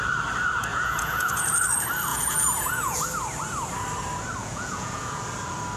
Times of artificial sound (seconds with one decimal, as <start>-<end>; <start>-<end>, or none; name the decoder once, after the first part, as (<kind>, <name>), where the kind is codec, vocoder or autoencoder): 0.7-1.6 (vocoder, Vocos); 2.1-3.0; 4.4-5.2

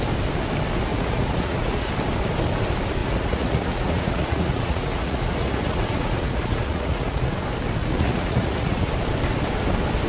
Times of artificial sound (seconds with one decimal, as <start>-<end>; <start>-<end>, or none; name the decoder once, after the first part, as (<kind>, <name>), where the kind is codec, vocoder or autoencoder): 0.9-1.9 (vocoder, Vocos); 3.0-7.3; 7.8-8.9

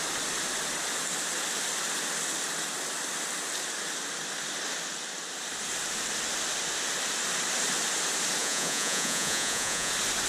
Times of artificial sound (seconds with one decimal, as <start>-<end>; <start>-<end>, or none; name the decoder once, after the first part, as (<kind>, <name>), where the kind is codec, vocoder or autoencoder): 8.4-9.9 (vocoder, Vocos)

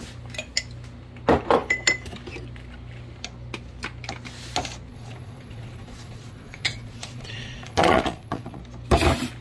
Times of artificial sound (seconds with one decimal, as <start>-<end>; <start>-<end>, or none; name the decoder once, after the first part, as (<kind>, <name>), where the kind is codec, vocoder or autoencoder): 4.9-8.6 (vocoder, Vocos)

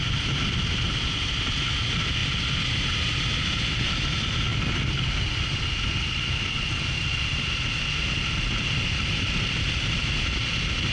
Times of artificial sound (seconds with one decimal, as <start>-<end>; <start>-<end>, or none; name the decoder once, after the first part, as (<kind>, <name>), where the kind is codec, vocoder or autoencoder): none

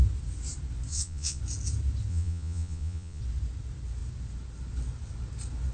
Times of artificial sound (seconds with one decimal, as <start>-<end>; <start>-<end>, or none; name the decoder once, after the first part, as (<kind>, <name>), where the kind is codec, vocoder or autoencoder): 0.9-1.4 (vocoder, Vocos); 2.1-3.2